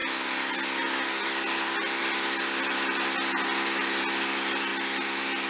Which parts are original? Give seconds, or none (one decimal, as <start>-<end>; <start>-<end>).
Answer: 0.0-5.5